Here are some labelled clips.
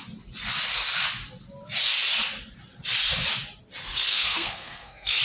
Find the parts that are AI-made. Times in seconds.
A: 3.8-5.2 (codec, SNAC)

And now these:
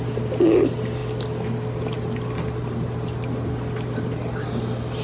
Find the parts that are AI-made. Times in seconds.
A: none